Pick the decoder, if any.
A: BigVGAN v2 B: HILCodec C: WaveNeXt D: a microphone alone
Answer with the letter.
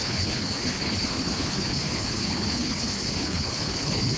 B